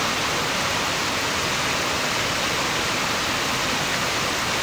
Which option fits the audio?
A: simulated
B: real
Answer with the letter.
B